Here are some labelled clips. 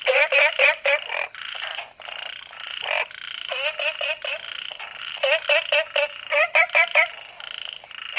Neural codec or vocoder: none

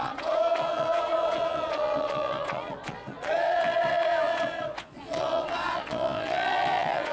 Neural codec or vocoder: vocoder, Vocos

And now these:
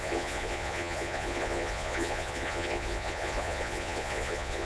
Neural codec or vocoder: vocoder, Vocos